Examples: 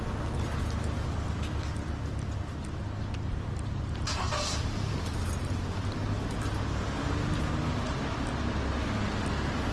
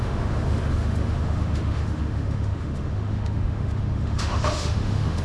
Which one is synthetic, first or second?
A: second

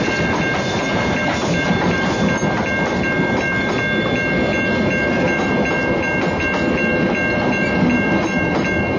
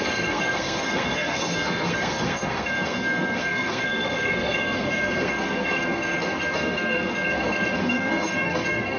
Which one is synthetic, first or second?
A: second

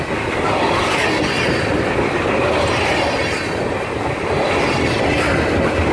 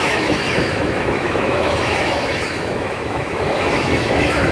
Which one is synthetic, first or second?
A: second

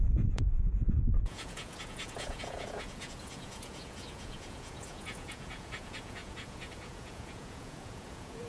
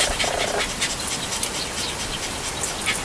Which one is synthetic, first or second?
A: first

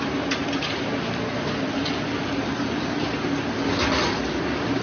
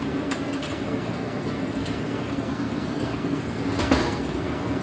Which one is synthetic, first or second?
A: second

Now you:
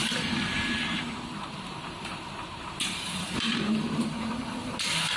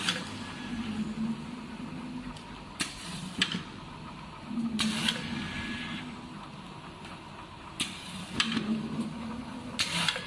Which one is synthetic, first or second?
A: first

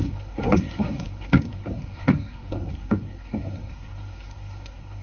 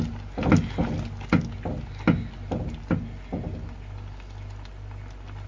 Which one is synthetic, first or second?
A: first